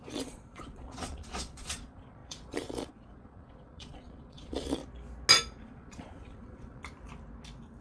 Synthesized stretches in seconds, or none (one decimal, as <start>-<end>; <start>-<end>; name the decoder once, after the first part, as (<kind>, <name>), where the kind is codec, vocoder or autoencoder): 0.0-4.8 (vocoder, Vocos); 5.6-6.8

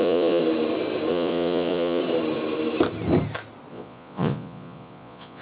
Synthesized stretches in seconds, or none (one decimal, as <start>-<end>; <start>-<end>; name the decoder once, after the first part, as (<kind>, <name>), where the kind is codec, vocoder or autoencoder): 0.0-0.4 (vocoder, Vocos); 1.1-2.0; 3.7-5.4

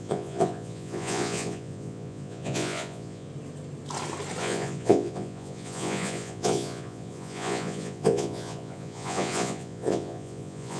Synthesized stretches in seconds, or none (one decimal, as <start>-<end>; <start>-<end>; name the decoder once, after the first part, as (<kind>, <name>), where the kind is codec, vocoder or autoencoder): 0.0-3.3 (vocoder, Vocos); 4.4-10.8

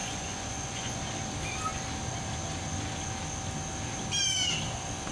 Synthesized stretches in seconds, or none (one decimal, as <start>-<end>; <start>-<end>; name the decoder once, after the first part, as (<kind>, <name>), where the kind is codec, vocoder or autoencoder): 0.0-1.0 (vocoder, Vocos)

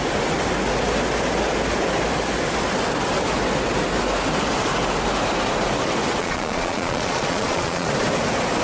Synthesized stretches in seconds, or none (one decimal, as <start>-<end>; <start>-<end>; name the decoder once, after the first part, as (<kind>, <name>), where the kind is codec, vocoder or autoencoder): 6.2-7.9 (vocoder, Vocos)